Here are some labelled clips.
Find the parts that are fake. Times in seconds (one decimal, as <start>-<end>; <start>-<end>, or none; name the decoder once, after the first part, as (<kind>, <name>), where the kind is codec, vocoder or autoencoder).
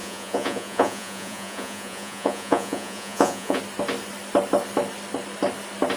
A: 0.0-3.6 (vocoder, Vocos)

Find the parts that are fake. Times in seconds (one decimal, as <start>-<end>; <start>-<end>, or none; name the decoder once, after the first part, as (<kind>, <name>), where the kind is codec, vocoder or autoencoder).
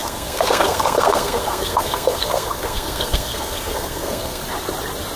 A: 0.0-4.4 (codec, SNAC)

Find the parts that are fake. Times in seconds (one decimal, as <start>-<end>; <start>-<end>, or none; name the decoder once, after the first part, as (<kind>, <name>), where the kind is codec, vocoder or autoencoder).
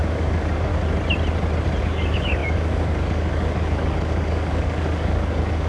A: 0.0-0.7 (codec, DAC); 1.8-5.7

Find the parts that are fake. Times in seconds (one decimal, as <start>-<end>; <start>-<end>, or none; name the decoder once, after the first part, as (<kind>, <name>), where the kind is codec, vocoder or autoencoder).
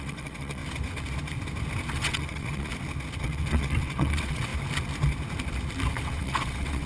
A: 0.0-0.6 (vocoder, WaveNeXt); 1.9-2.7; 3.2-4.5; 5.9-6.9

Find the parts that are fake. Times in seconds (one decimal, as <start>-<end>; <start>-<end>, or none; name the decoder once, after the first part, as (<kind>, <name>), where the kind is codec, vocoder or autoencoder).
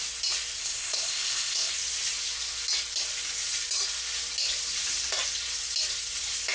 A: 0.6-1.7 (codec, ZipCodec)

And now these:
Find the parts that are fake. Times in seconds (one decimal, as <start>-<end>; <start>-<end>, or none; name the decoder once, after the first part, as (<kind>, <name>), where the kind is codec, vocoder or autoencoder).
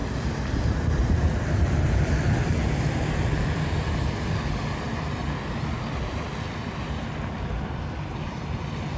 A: none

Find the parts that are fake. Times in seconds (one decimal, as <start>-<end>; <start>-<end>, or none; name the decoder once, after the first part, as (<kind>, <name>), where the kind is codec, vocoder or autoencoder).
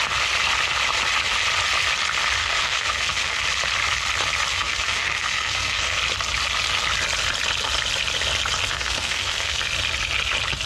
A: 2.4-3.4 (codec, SNAC); 4.5-6.0; 8.7-9.6